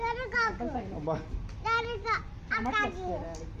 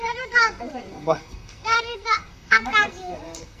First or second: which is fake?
second